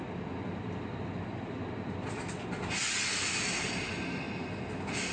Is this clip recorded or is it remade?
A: recorded